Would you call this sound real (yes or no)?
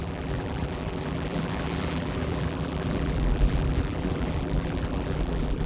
no